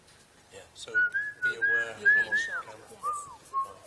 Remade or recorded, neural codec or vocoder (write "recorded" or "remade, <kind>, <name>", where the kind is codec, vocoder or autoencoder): recorded